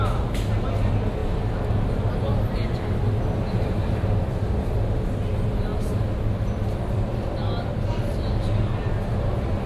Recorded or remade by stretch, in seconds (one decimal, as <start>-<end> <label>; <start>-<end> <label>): 0.0-9.7 recorded